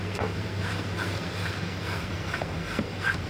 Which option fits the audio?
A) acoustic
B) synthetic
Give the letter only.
B